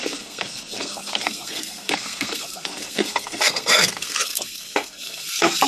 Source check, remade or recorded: remade